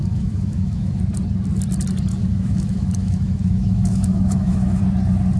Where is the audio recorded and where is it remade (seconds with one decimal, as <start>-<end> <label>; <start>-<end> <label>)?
0.0-1.0 remade; 1.0-2.1 recorded; 2.1-4.8 remade; 4.8-5.4 recorded